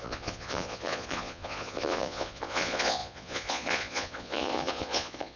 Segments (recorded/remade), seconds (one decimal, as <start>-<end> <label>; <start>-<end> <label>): 0.0-5.4 remade